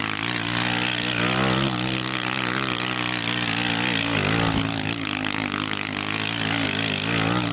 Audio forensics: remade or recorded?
remade